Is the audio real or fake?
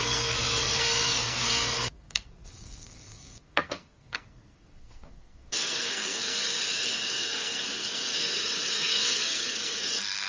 fake